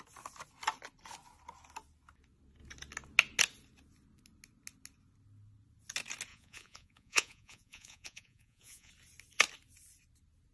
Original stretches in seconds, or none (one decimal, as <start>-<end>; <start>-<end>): 0.0-6.3; 8.9-10.5